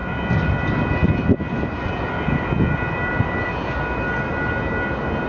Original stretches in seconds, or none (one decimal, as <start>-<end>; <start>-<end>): 0.0-5.3